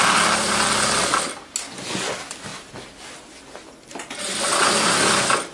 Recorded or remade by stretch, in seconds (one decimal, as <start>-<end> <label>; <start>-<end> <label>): 0.0-5.5 recorded